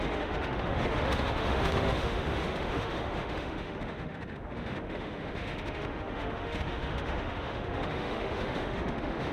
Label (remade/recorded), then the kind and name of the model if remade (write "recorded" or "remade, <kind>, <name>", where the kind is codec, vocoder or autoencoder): remade, autoencoder, DAC-VAE